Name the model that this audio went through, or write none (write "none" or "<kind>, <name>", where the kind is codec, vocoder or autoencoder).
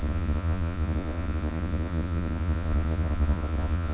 vocoder, Vocos